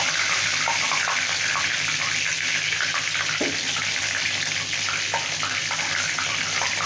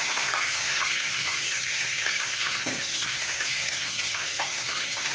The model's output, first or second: second